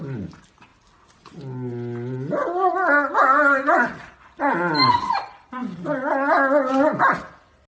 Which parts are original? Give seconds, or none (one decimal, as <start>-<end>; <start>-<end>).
0.0-7.7